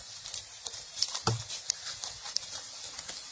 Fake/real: real